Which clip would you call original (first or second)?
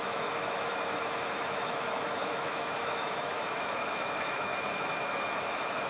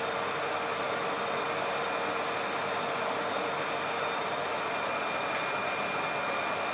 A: second